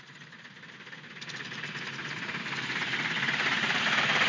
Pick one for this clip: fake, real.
real